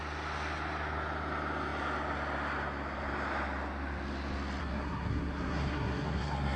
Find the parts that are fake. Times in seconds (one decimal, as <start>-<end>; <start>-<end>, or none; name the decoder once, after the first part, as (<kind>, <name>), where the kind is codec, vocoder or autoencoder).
4.6-6.6 (codec, SNAC)